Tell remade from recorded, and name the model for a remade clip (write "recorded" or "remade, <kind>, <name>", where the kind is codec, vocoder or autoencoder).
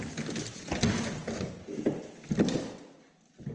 recorded